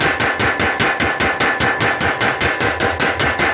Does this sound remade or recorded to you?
recorded